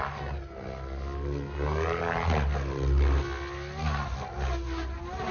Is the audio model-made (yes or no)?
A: no